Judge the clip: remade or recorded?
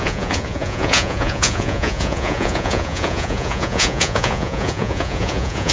remade